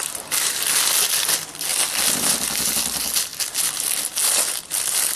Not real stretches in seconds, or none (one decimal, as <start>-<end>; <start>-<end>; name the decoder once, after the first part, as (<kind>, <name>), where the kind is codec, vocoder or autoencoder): none